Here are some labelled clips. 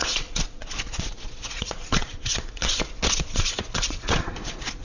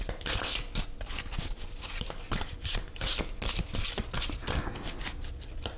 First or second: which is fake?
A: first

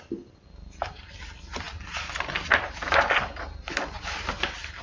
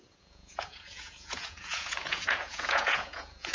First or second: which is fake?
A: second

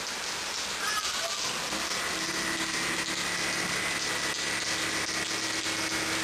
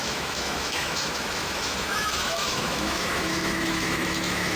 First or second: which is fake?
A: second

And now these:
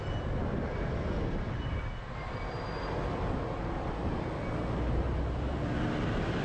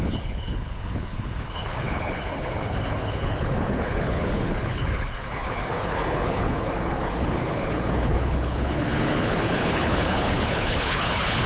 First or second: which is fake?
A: second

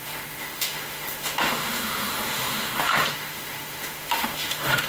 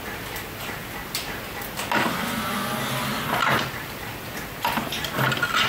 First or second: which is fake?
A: first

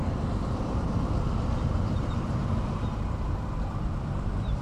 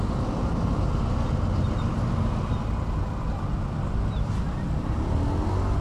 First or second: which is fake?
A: first